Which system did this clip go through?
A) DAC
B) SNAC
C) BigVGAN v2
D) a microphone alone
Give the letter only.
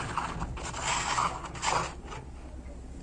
D